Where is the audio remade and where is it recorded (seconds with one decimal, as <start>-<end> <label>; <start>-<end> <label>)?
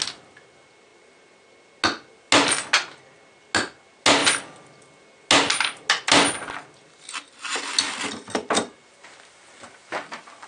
0.0-10.5 recorded